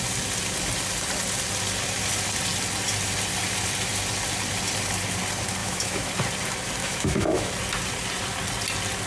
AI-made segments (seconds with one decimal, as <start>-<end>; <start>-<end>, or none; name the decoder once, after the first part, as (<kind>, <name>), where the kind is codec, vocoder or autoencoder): 5.6-6.1 (autoencoder, DAC-VAE); 6.8-7.5